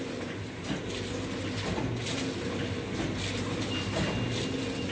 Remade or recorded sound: recorded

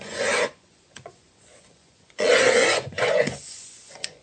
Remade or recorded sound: remade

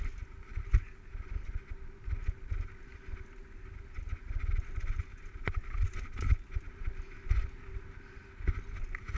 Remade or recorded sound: recorded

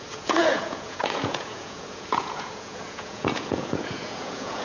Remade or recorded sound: remade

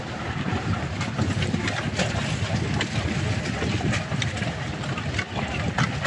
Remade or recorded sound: recorded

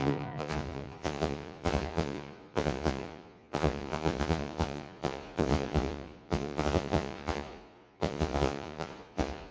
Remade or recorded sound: remade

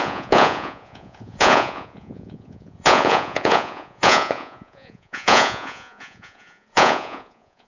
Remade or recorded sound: remade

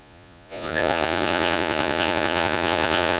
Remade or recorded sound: remade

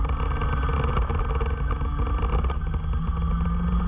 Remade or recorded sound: recorded